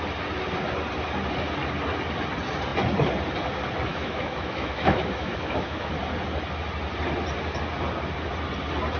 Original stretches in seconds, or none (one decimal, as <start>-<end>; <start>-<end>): 0.0-3.9; 5.9-9.0